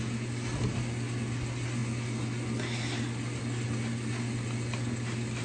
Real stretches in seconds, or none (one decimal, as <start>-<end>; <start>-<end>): 0.0-5.4